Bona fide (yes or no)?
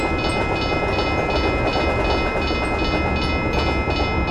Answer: yes